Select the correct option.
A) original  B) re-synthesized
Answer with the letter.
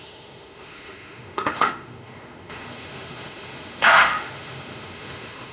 B